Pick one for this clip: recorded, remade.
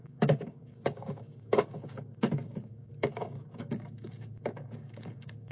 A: remade